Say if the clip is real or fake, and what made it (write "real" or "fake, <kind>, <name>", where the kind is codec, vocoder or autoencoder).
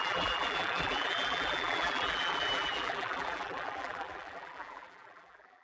fake, vocoder, BigVGAN v2